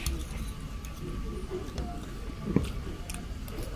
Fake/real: real